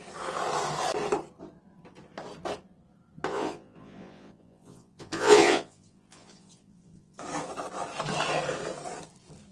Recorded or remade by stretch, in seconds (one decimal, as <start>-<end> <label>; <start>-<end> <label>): 0.0-3.3 recorded; 3.3-7.2 remade; 7.2-9.5 recorded

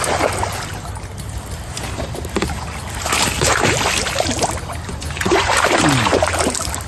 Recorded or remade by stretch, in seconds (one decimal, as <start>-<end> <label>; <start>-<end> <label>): 0.0-4.9 recorded; 4.9-5.5 remade; 5.5-6.9 recorded

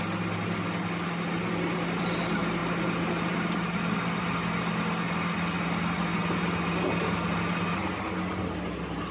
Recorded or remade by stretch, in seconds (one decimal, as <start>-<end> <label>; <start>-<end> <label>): 0.0-9.1 recorded

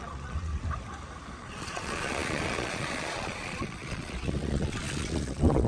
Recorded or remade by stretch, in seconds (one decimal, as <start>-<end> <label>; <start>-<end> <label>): 0.0-0.5 remade; 0.5-1.4 recorded; 1.4-5.7 remade

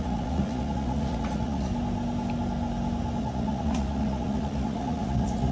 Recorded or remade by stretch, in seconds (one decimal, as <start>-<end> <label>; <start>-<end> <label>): 0.0-1.7 remade; 1.7-3.2 recorded; 3.2-5.5 remade

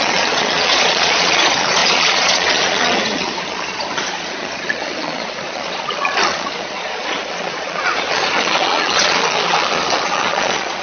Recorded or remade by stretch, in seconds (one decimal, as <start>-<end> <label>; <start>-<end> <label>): 0.0-10.8 remade